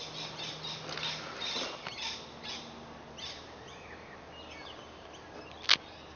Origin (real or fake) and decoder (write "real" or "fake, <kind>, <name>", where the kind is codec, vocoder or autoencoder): real